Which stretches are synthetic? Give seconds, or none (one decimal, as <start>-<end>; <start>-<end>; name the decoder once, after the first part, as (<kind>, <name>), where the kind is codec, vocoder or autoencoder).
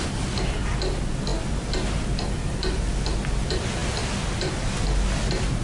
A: none